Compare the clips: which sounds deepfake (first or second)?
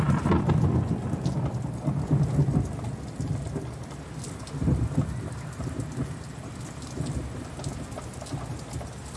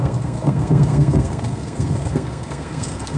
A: second